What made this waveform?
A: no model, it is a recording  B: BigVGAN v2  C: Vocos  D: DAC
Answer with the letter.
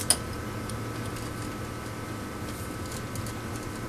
A